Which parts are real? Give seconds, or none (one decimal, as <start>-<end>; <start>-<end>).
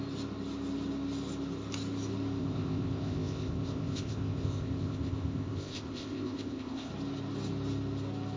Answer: 0.0-2.4; 6.9-8.4